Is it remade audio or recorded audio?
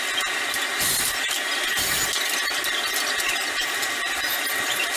recorded